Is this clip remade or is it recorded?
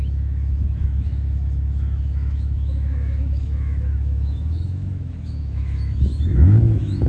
remade